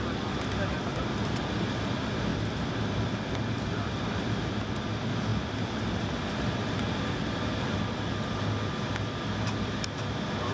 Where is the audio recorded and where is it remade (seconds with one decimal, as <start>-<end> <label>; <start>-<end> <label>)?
0.0-2.3 recorded; 2.3-4.3 remade; 4.3-5.3 recorded; 5.3-8.3 remade; 8.3-10.5 recorded